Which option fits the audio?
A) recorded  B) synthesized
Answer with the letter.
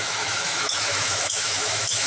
B